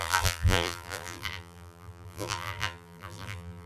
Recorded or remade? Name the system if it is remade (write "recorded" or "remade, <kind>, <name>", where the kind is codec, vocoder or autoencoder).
remade, vocoder, BigVGAN v2